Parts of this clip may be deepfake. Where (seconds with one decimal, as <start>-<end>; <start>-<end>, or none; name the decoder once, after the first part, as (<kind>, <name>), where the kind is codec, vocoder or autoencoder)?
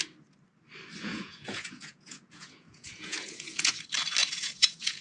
1.0-3.7 (vocoder, Vocos); 4.2-5.0